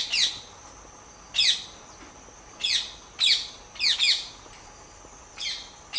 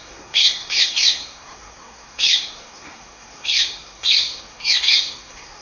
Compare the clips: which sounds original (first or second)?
first